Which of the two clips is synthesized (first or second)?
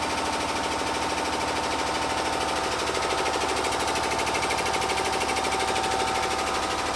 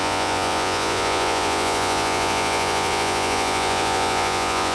second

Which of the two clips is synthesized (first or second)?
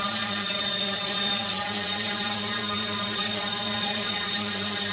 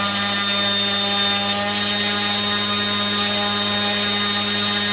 first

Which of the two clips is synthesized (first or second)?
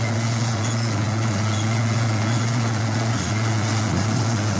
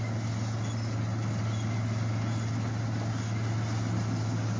first